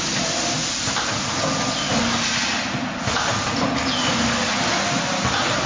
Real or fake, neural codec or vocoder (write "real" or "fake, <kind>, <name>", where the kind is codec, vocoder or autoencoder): real